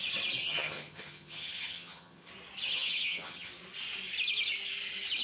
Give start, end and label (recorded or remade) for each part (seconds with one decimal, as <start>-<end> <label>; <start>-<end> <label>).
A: 0.0-0.4 recorded; 0.4-2.3 remade; 2.3-2.7 recorded; 2.7-3.5 remade; 3.5-5.2 recorded